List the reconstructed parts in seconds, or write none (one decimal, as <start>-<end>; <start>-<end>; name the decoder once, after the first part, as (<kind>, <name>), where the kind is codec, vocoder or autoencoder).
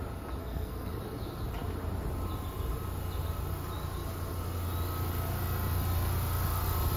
0.4-1.0 (codec, SNAC)